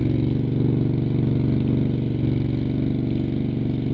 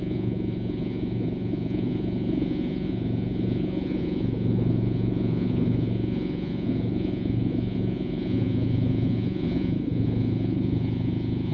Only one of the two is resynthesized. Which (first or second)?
second